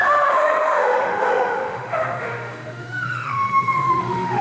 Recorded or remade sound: remade